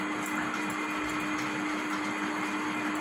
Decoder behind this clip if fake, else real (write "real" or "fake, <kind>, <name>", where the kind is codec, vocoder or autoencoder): real